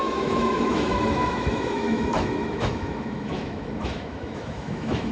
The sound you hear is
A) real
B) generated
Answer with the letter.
B